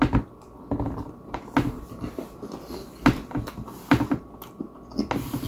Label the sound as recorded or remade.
recorded